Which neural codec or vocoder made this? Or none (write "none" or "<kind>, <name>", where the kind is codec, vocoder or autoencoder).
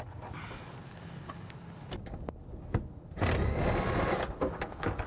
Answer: none